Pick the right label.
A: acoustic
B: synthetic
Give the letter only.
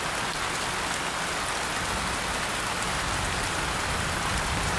A